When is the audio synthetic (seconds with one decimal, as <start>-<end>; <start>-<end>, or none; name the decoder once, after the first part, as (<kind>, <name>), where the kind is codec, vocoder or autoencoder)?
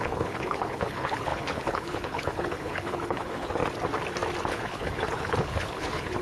0.0-3.6 (codec, HILCodec); 4.5-6.2